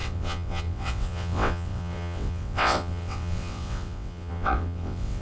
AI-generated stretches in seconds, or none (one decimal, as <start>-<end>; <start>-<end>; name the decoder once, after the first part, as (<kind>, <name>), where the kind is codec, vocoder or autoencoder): 0.0-5.2 (vocoder, WaveNeXt)